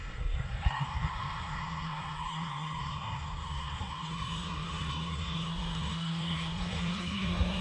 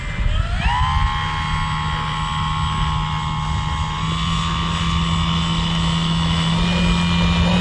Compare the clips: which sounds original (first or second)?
second